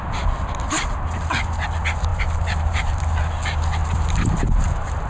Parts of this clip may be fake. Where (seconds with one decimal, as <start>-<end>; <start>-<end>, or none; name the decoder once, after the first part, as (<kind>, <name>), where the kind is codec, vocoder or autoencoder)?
2.1-3.0 (vocoder, BigVGAN v2); 3.8-5.1